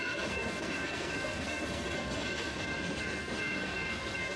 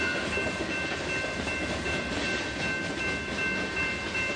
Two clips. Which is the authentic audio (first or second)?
second